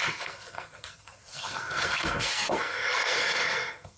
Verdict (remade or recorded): remade